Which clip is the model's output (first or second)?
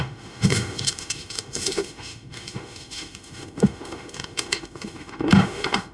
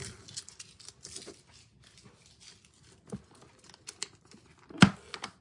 first